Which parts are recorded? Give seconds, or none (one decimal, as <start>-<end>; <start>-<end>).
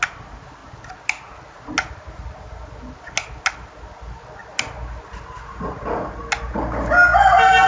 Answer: 0.0-7.7